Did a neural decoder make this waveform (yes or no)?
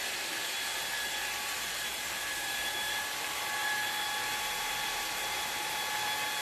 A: yes